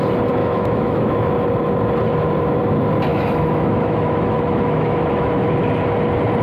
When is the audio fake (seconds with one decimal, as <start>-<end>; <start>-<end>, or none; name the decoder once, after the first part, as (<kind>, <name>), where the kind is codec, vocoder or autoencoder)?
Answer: 0.4-1.3 (autoencoder, DAC-VAE); 3.1-5.5